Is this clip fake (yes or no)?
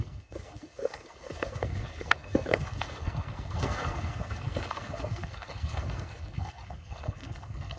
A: yes